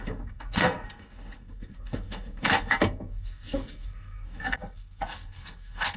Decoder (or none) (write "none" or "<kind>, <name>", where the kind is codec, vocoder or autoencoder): codec, SNAC